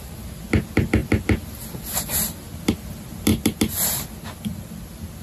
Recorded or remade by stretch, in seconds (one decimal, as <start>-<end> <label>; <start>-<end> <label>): 0.0-5.2 recorded